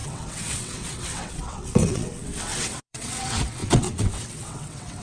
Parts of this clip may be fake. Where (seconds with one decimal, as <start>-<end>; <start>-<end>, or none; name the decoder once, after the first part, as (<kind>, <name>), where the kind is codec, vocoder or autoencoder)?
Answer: 0.0-5.0 (vocoder, WaveNeXt)